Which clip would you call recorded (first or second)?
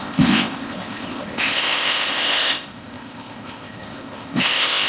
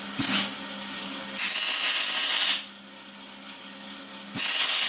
second